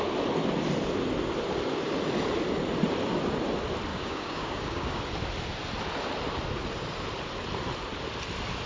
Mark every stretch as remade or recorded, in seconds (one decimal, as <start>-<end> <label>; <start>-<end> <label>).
0.0-3.9 recorded; 3.9-5.0 remade; 5.0-8.7 recorded